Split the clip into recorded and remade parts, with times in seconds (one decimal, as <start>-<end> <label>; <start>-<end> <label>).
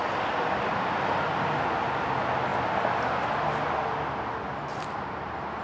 0.0-5.6 recorded